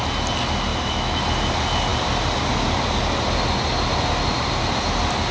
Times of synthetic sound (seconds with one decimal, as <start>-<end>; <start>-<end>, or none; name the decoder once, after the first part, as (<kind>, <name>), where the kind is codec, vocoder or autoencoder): 0.7-1.2 (autoencoder, DAC-VAE)